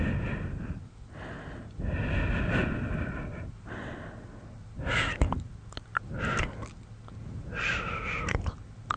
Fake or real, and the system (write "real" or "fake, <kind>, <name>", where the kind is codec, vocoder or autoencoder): real